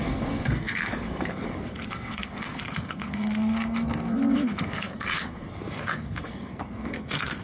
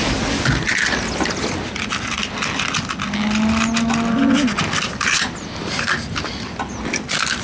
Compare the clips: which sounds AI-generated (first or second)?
first